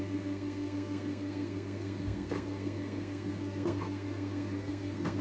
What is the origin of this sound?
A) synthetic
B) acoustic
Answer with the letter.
A